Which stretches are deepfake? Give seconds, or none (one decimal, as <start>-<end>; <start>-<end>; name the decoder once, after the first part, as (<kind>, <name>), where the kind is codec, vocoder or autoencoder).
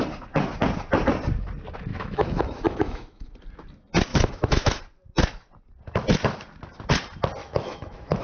1.9-3.3 (autoencoder, DAC-VAE); 4.1-4.8; 7.4-8.2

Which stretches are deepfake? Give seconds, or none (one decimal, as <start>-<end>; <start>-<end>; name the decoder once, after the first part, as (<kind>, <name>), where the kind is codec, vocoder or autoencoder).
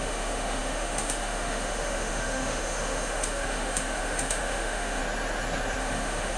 0.0-5.0 (autoencoder, DAC-VAE); 5.8-6.4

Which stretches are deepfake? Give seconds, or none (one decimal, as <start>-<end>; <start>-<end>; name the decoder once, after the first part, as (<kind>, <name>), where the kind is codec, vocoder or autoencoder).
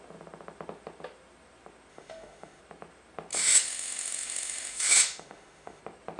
1.9-2.6 (autoencoder, DAC-VAE); 3.3-5.8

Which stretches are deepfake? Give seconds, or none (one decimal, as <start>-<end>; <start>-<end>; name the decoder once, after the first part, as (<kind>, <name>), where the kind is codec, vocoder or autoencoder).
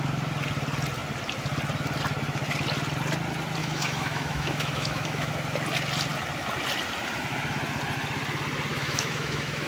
3.6-5.3 (autoencoder, DAC-VAE); 8.7-9.7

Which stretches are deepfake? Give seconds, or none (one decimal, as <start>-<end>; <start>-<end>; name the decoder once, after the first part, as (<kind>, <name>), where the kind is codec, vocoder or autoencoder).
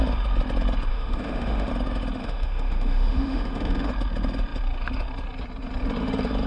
0.9-1.7 (autoencoder, DAC-VAE); 2.2-3.9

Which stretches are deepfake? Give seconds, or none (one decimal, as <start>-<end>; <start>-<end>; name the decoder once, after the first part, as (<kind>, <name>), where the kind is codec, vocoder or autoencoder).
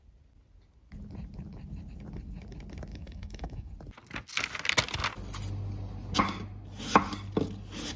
2.9-3.7 (autoencoder, DAC-VAE)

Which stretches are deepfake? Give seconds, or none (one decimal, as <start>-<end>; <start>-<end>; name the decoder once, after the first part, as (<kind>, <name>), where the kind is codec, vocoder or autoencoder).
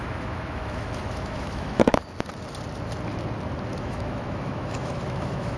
0.0-2.0 (autoencoder, DAC-VAE); 3.8-5.6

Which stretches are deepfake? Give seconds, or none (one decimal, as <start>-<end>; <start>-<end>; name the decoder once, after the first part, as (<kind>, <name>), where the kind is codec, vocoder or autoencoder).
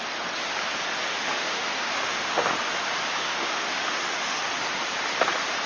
1.1-2.5 (autoencoder, DAC-VAE); 3.2-4.4